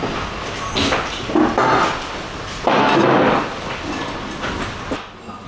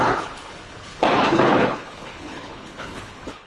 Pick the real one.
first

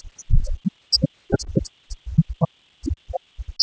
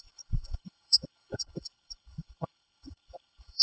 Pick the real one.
first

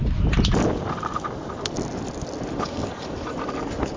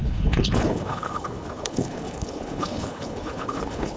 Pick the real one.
first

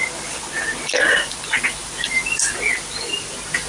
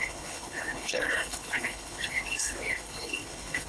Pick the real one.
first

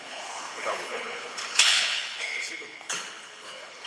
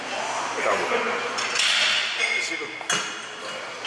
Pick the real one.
second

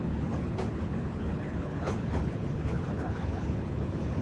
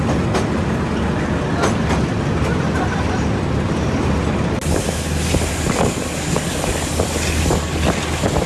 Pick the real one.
second